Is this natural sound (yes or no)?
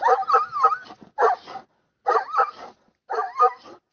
yes